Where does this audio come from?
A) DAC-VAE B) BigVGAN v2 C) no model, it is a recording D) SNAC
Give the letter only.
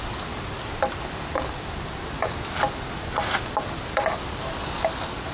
C